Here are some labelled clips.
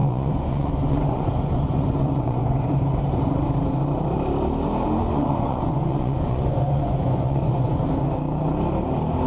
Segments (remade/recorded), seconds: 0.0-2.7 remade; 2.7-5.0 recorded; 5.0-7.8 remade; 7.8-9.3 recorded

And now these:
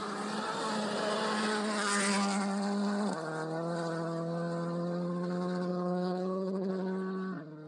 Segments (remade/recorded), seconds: 0.0-5.7 recorded; 5.7-6.7 remade; 6.7-7.7 recorded

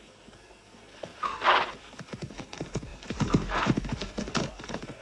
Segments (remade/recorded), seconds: 0.0-5.0 remade

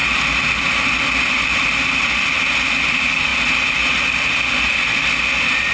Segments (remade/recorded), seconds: 0.0-5.7 recorded